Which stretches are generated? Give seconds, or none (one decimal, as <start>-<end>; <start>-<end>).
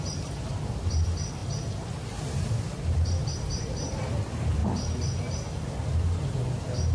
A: 0.0-1.4; 1.9-4.6